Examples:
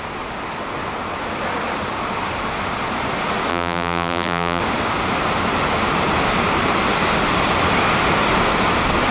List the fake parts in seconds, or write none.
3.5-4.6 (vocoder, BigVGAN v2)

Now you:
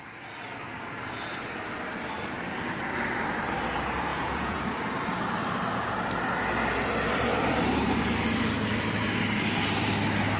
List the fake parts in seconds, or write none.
4.1-4.7 (vocoder, Vocos)

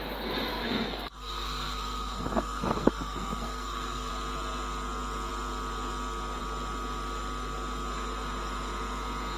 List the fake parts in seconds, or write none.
0.5-4.1 (codec, SNAC)

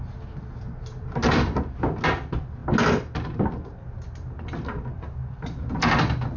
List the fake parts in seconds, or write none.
none

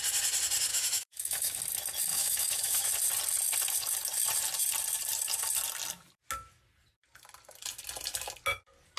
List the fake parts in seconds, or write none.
0.7-1.6 (autoencoder, DAC-VAE); 2.1-2.9

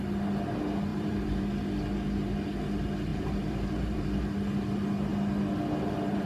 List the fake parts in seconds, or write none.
0.9-1.4 (vocoder, BigVGAN v2); 3.1-4.2

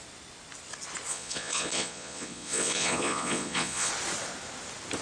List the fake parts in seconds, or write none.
1.1-3.9 (vocoder, Vocos)